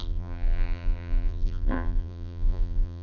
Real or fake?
fake